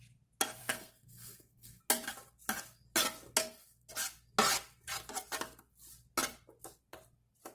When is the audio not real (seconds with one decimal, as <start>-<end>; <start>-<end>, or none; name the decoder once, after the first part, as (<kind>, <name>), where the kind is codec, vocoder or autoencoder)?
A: 0.6-1.8 (codec, SNAC); 3.4-3.9